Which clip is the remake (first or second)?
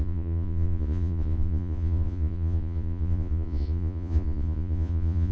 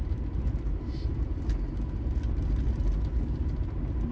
first